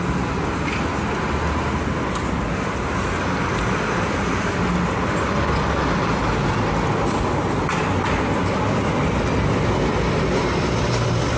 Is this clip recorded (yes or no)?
yes